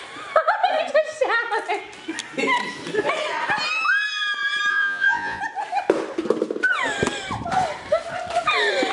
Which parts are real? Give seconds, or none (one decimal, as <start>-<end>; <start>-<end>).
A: 0.0-4.7; 5.4-8.9